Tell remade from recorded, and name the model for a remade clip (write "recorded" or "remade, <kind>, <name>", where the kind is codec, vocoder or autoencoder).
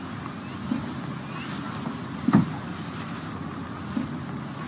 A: recorded